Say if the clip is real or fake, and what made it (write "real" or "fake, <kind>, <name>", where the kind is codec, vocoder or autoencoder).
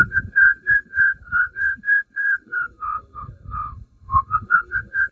fake, codec, HILCodec